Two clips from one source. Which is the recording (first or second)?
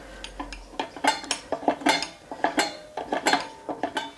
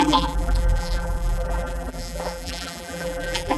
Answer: first